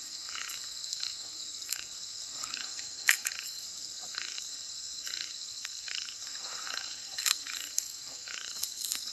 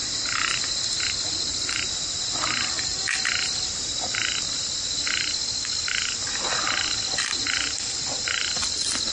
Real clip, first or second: second